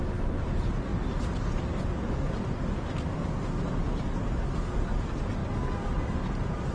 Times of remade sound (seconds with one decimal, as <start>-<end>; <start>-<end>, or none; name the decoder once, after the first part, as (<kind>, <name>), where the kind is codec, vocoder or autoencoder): 0.0-0.9 (vocoder, BigVGAN v2); 4.9-5.4; 6.1-6.7